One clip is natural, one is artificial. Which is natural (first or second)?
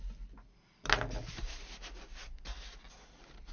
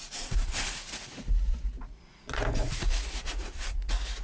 first